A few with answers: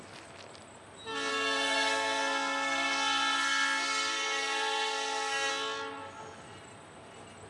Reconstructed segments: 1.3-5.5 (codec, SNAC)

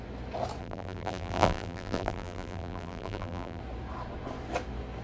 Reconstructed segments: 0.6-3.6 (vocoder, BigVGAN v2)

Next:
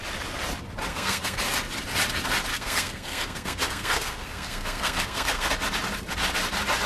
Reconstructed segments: 0.9-1.4 (codec, SNAC); 2.5-5.5

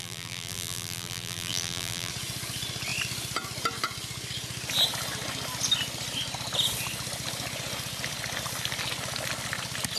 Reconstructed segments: 0.0-2.1 (vocoder, BigVGAN v2)

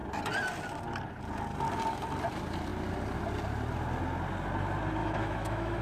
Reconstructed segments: 5.0-5.8 (autoencoder, DAC-VAE)

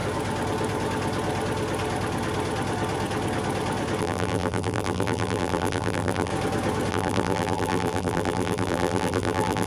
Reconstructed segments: 4.0-6.3 (vocoder, BigVGAN v2); 6.9-9.7

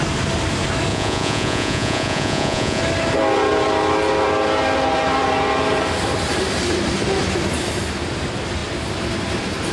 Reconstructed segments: 0.9-2.8 (vocoder, Vocos)